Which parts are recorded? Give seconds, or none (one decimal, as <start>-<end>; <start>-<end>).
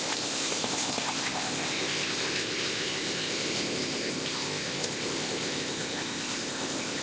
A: none